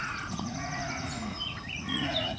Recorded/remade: remade